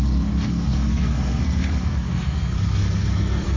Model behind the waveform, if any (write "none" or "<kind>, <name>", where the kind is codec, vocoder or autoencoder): codec, SNAC